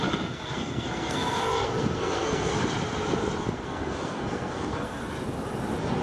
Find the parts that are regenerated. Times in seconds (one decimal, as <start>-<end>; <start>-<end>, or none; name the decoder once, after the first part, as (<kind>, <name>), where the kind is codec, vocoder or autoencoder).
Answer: 0.0-2.5 (codec, SNAC); 3.4-5.0